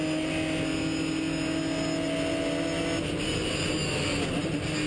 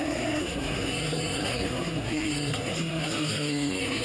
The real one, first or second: first